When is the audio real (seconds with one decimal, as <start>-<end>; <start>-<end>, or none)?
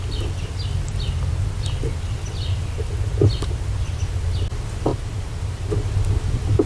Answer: 0.0-4.9; 5.7-6.7